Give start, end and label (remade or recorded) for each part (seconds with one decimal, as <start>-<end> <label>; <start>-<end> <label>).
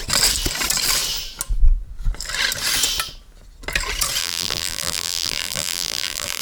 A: 0.0-4.2 recorded; 4.2-6.4 remade